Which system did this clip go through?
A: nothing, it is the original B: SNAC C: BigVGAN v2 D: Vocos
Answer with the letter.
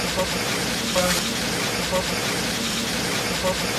A